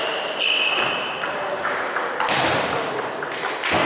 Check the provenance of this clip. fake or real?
real